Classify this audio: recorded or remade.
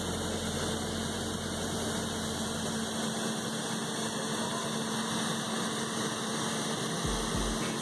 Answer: recorded